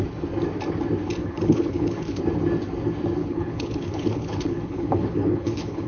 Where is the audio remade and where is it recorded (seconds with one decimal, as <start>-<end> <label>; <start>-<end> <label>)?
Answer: 0.0-1.2 recorded; 1.2-2.2 remade; 2.2-3.2 recorded; 3.2-5.9 remade